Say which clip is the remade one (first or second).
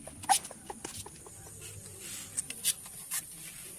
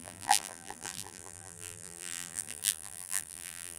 second